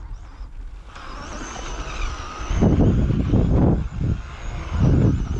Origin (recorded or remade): recorded